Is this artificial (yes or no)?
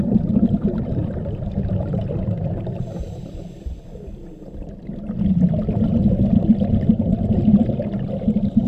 no